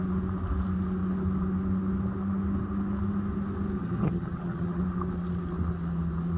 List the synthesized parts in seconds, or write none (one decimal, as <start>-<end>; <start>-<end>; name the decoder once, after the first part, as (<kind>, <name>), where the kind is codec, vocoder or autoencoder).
3.8-4.8 (vocoder, HiFi-GAN)